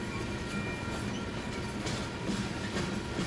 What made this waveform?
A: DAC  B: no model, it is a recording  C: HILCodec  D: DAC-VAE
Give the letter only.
B